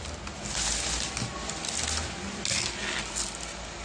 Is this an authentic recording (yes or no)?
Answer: yes